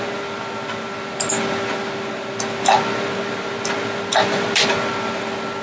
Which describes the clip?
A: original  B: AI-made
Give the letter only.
A